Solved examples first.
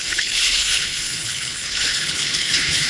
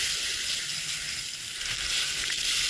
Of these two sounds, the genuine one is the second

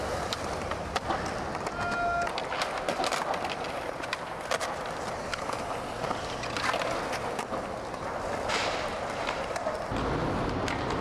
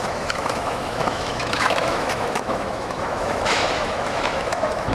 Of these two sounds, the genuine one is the first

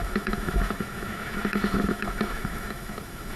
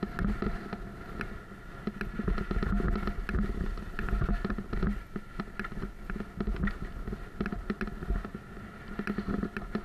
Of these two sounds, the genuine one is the second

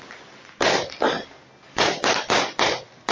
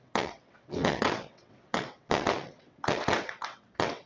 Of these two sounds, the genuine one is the first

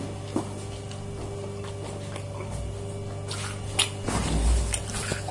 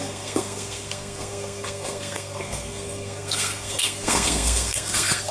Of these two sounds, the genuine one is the first